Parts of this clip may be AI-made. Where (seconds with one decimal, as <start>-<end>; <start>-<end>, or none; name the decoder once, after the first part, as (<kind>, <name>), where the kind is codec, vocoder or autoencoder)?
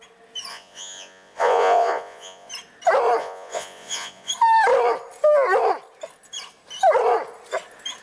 0.5-2.5 (vocoder, Vocos); 3.2-4.3